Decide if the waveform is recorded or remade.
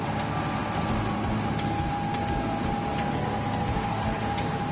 recorded